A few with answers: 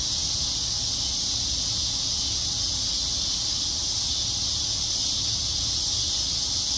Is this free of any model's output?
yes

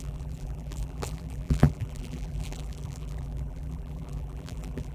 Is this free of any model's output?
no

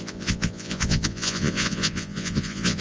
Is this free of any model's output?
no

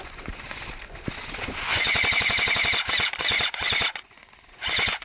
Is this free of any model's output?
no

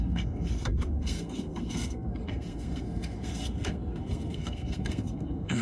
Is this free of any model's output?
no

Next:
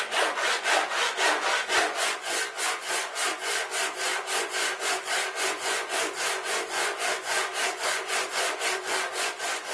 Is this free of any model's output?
no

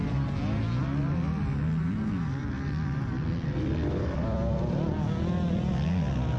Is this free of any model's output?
yes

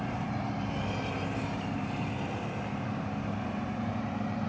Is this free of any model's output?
no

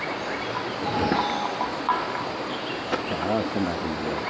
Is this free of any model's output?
yes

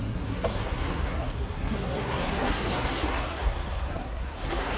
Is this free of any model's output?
no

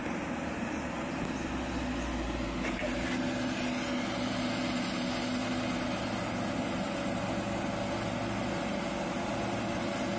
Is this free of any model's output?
yes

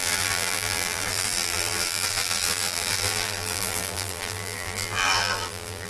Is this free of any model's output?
no